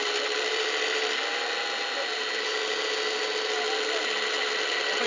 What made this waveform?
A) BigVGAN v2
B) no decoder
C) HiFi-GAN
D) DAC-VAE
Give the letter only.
B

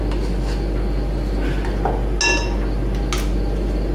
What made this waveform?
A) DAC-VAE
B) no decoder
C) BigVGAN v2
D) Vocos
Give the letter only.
B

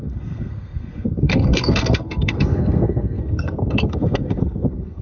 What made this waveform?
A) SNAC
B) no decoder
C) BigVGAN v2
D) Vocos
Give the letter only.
A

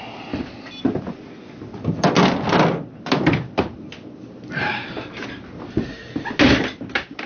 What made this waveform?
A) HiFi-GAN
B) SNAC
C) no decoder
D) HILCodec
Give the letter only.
C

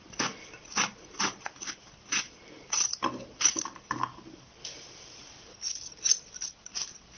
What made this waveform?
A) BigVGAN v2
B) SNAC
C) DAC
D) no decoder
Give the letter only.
D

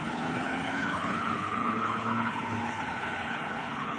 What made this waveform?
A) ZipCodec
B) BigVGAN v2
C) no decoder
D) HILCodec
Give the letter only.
D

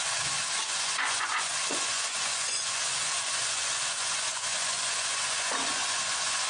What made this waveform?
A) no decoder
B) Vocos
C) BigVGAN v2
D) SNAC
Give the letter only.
B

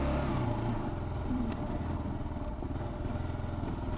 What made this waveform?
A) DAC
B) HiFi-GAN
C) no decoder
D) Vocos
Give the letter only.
C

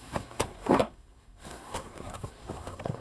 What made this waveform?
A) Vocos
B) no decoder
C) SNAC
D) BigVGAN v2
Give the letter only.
C